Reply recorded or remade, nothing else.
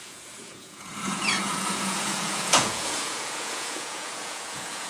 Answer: remade